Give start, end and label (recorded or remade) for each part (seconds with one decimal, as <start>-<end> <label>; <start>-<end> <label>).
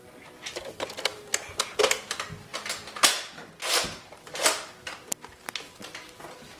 0.0-1.1 recorded; 1.1-1.8 remade; 1.8-6.6 recorded